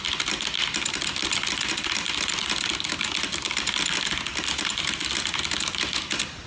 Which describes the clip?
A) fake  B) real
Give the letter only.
B